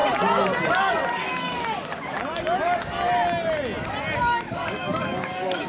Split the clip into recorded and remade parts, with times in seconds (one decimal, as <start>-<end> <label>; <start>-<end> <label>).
0.0-0.8 recorded; 0.8-2.2 remade; 2.2-4.2 recorded; 4.2-5.7 remade